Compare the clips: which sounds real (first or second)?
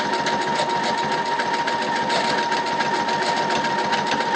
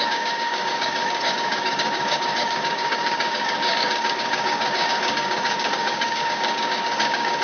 first